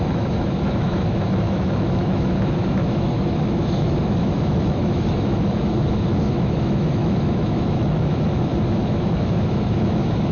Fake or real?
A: fake